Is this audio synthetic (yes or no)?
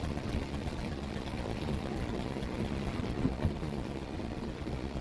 yes